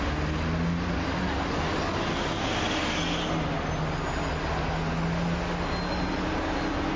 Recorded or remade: recorded